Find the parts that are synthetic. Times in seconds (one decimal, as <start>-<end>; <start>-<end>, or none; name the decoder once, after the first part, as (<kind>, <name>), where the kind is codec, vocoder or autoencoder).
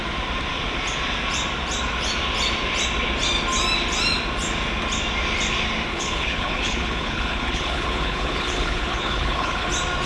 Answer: 5.9-9.7 (codec, HILCodec)